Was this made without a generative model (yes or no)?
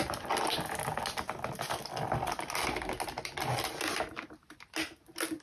yes